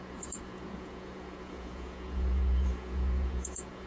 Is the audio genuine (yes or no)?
no